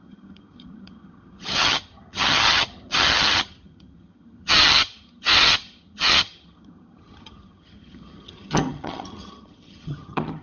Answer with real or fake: fake